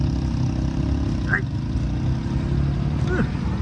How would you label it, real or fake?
real